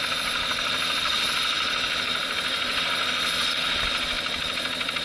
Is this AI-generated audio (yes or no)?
yes